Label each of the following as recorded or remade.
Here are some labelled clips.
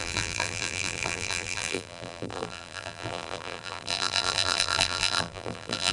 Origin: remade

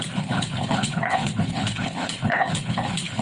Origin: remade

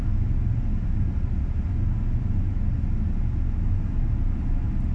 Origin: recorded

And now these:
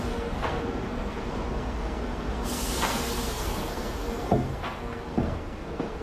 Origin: remade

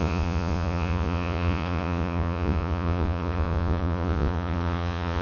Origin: remade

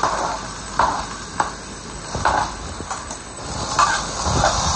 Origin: recorded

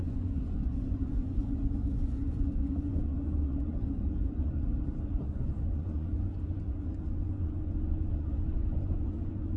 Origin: remade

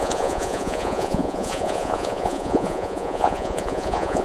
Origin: remade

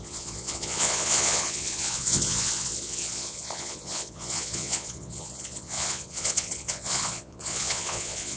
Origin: remade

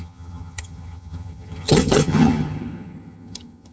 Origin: remade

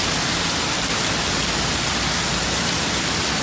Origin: recorded